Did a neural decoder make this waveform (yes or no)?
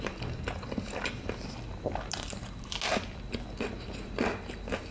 no